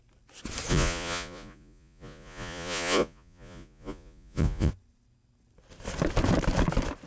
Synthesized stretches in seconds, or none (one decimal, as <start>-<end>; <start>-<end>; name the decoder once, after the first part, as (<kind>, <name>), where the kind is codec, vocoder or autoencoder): 0.7-4.7 (vocoder, Vocos)